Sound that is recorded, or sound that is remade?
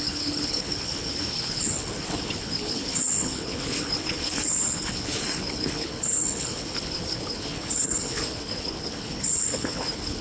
remade